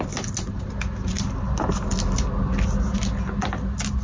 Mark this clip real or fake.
real